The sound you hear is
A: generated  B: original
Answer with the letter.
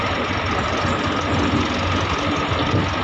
B